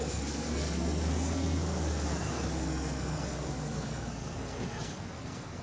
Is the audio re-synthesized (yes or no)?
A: yes